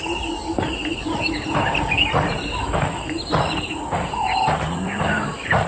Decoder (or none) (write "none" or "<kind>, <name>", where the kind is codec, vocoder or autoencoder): none